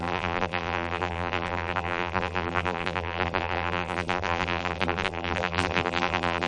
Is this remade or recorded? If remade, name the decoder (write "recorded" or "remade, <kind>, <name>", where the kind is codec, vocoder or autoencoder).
remade, vocoder, BigVGAN v2